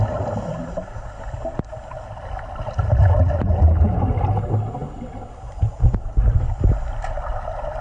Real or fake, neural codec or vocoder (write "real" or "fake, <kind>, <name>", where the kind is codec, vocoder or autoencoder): real